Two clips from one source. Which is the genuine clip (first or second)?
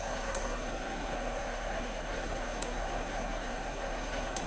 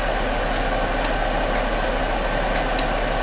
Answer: second